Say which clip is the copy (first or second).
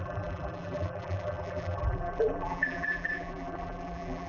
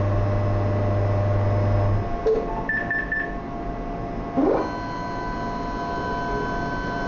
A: first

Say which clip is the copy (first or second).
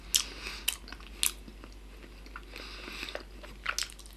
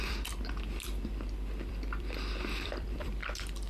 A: second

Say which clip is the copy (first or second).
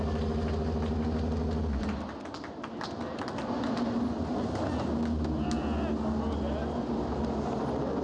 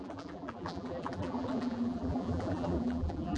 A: second